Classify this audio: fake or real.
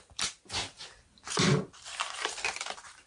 real